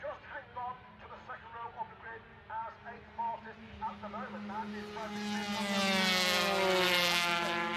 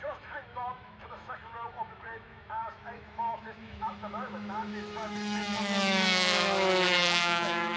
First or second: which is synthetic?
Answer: second